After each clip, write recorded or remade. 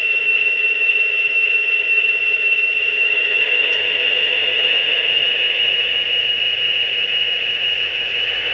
remade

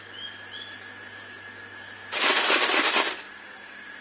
recorded